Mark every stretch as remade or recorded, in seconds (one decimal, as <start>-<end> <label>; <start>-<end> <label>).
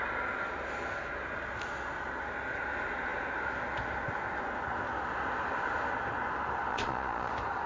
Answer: 0.0-6.7 recorded; 6.7-7.3 remade; 7.3-7.7 recorded